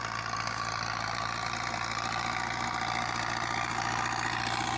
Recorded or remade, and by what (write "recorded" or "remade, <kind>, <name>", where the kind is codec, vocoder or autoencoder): recorded